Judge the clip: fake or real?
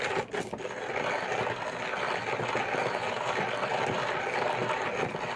real